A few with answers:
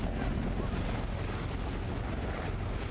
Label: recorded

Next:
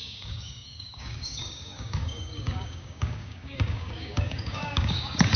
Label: remade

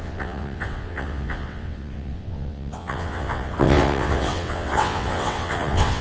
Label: remade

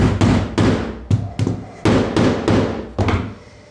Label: recorded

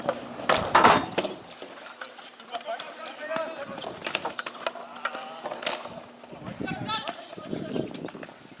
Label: recorded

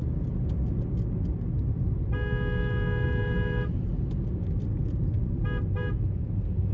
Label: recorded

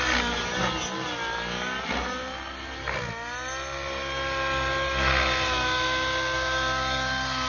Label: recorded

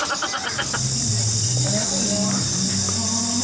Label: recorded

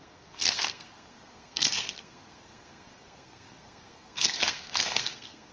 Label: remade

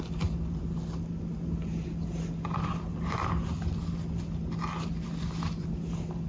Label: recorded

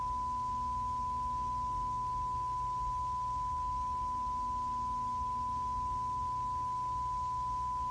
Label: recorded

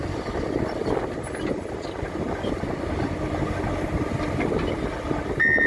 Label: recorded